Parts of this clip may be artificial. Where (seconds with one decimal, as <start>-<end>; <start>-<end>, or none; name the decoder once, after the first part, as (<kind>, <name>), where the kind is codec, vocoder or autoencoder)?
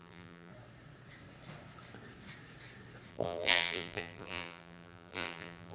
0.0-0.5 (vocoder, BigVGAN v2); 3.1-5.7